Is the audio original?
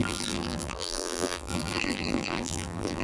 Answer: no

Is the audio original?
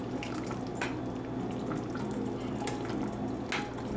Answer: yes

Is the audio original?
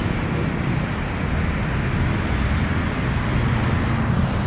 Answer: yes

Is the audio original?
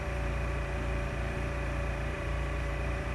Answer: no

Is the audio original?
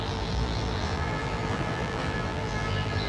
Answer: no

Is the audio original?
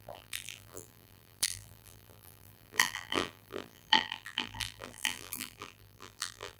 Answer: no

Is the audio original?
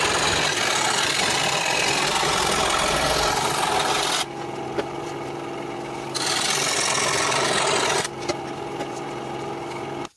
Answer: yes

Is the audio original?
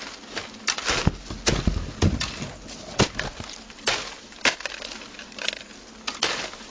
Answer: yes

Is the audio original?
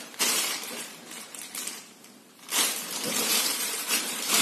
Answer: no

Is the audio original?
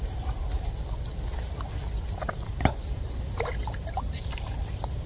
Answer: no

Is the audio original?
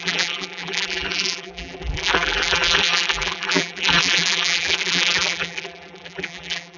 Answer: no